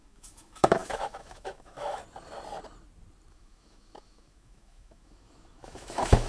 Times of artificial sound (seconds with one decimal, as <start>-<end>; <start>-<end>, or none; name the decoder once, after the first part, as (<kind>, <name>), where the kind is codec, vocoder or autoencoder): 0.0-2.0 (autoencoder, DAC-VAE); 3.3-6.3